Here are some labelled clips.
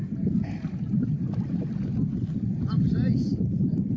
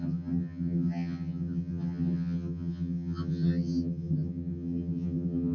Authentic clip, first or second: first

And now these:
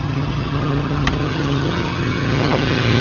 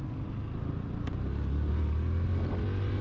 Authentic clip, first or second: second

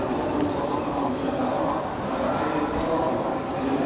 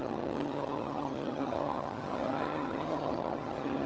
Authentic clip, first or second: first